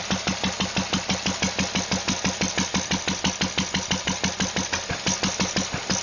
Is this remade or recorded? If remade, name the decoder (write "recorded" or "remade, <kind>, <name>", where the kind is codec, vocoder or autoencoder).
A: recorded